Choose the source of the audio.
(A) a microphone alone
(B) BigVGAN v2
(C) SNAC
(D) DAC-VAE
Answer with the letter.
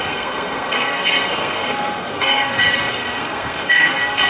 C